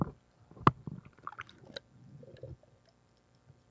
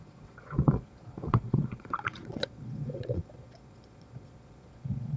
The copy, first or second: second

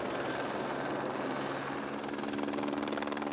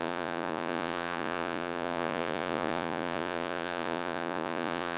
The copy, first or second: second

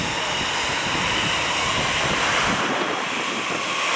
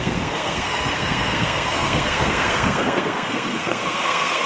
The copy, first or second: second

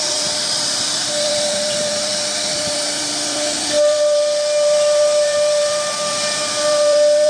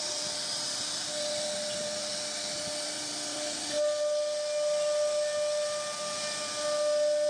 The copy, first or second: first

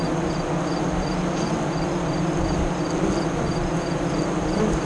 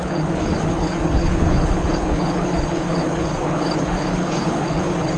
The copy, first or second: second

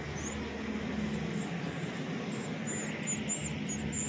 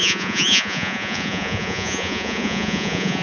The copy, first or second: second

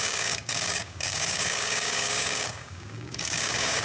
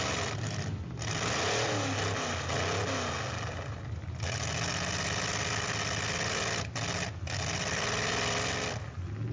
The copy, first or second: first